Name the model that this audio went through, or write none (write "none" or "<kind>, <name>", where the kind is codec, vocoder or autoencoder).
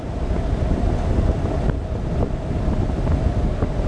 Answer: none